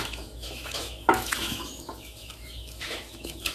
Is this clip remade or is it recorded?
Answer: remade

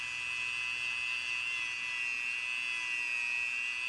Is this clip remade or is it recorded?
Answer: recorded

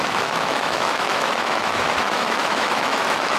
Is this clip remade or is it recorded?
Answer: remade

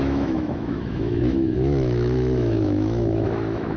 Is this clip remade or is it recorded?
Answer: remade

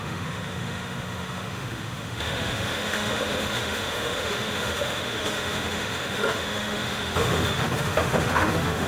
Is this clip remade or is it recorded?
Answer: remade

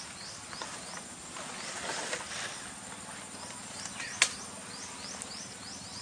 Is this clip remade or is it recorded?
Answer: recorded